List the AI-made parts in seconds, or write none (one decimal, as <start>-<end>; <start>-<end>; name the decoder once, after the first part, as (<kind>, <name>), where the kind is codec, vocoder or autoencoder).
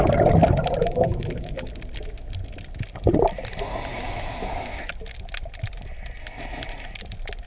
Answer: 0.8-1.7 (autoencoder, DAC-VAE); 3.9-4.9